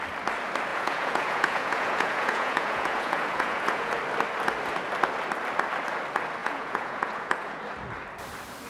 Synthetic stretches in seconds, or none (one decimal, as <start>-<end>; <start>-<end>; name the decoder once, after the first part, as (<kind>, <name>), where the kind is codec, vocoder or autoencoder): 0.7-3.9 (vocoder, Vocos); 6.4-7.6